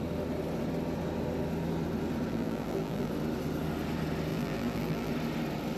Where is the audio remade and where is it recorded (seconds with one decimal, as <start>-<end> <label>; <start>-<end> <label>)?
0.0-2.3 recorded; 2.3-3.1 remade; 3.1-4.3 recorded; 4.3-5.1 remade; 5.1-5.8 recorded